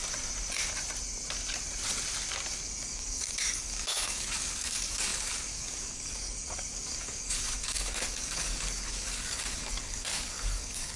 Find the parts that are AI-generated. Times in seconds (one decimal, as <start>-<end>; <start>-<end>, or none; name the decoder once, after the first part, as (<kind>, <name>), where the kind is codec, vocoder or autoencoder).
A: 2.6-11.0 (codec, DAC)

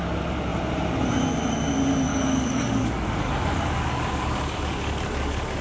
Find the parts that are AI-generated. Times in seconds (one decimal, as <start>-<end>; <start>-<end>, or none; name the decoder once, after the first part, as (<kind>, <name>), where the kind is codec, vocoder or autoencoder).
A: 2.1-5.6 (codec, DAC)

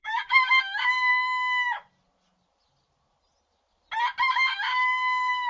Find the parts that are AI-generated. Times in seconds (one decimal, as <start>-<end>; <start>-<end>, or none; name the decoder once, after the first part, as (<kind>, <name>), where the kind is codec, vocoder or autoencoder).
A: 0.0-1.1 (codec, DAC); 4.3-5.5

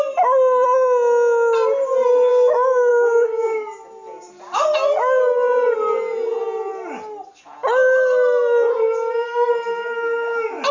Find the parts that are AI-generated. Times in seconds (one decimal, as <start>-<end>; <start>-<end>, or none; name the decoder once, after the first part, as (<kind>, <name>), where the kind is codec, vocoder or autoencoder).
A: none

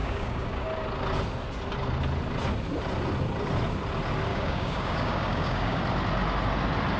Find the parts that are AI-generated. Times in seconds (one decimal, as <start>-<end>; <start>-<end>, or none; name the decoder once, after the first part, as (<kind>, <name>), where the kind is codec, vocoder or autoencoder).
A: 0.0-0.6 (codec, DAC); 4.3-5.8